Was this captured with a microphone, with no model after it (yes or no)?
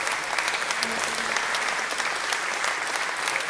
yes